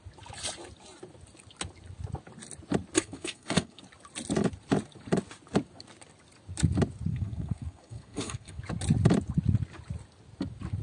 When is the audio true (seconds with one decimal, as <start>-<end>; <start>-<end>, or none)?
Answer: 0.0-3.0; 3.8-7.1; 8.6-10.8